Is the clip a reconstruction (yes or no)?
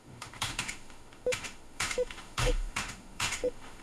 yes